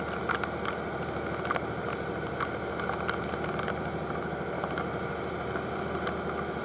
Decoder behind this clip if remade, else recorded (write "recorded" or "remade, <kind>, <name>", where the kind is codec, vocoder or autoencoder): recorded